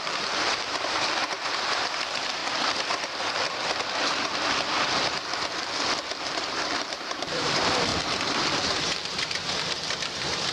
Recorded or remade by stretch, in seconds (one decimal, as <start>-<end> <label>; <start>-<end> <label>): 0.0-2.4 remade; 2.4-6.2 recorded; 6.2-10.5 remade